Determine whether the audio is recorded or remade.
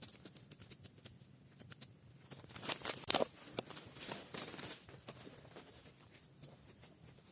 remade